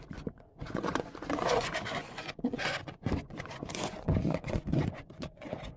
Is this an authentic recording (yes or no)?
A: no